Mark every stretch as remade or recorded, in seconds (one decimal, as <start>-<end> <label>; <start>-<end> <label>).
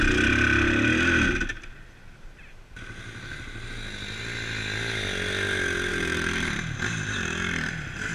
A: 0.0-5.9 recorded; 5.9-6.6 remade; 6.6-8.1 recorded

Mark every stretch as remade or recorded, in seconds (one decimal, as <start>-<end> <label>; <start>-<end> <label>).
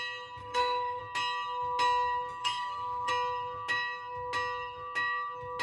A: 0.0-0.4 recorded; 0.4-1.0 remade; 1.0-2.4 recorded; 2.4-3.1 remade; 3.1-5.6 recorded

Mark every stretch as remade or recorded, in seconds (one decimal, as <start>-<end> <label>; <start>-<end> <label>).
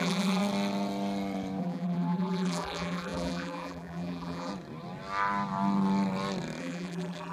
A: 0.0-0.4 remade; 0.4-1.6 recorded; 1.6-4.5 remade; 4.5-6.6 recorded; 6.6-7.3 remade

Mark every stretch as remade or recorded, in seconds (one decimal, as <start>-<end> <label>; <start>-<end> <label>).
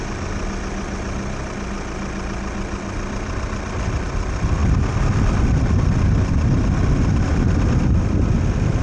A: 0.0-8.8 recorded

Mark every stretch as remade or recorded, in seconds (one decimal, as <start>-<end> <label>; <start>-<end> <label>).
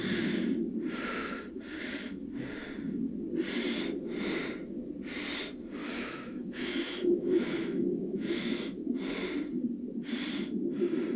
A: 0.0-5.8 recorded; 5.8-8.8 remade; 8.8-11.2 recorded